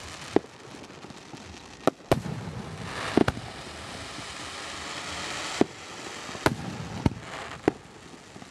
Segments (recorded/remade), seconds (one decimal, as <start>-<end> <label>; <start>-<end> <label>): 0.0-8.5 recorded